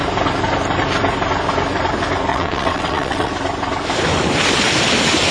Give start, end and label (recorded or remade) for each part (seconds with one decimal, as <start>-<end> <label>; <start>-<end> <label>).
0.0-2.3 recorded; 2.3-3.3 remade; 3.3-5.3 recorded